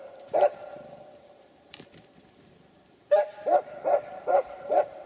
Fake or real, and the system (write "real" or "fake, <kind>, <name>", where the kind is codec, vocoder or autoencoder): fake, vocoder, BigVGAN v2